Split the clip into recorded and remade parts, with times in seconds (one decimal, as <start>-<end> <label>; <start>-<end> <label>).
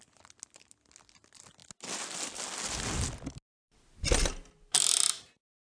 0.0-5.8 recorded